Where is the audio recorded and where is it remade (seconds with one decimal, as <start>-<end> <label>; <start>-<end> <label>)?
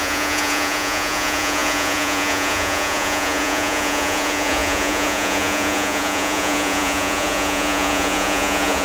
0.0-8.8 remade